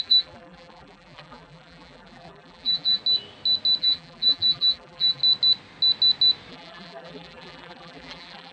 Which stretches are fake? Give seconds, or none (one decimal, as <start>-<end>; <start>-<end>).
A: 0.0-3.0; 3.8-5.2; 6.5-8.5